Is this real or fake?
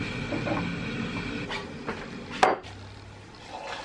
real